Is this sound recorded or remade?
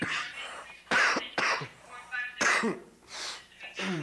remade